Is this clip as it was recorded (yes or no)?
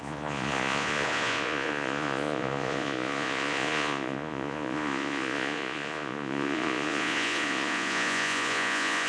no